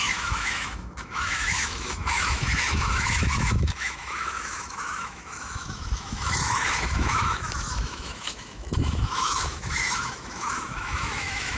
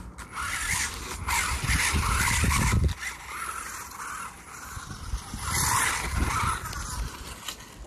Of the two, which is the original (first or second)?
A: second